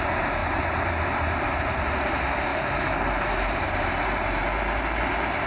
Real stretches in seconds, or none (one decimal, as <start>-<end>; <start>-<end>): 0.0-0.4; 1.7-2.5; 4.4-5.5